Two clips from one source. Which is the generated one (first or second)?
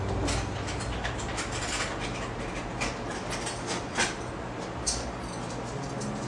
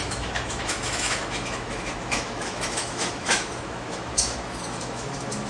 second